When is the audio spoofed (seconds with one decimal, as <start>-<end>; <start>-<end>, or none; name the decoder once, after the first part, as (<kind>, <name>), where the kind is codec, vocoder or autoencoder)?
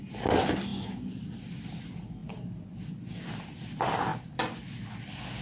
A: 4.1-4.6 (vocoder, BigVGAN v2)